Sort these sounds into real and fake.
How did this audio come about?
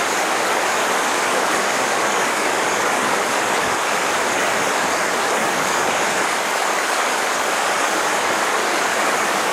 fake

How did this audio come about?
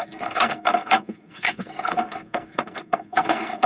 fake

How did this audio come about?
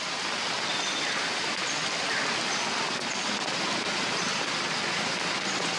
real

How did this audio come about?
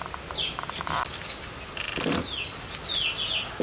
real